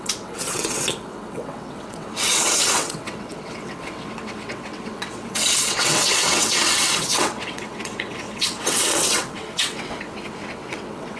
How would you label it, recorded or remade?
remade